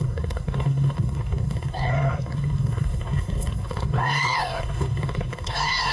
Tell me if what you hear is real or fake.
fake